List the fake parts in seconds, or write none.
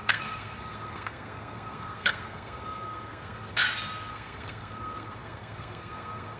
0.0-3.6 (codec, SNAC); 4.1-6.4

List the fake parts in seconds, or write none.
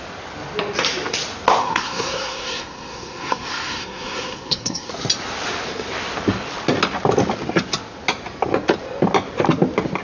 1.6-4.9 (codec, SNAC)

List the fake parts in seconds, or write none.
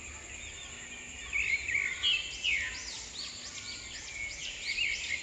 none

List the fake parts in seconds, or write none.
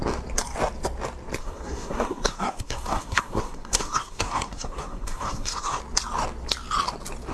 1.4-5.8 (codec, SNAC)